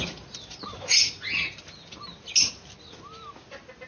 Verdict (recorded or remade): recorded